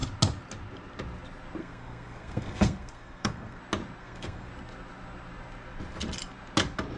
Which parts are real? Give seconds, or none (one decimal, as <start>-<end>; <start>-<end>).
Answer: 0.0-1.6; 3.6-4.0; 4.5-7.0